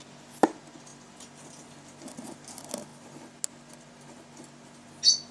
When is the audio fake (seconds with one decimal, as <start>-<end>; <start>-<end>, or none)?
none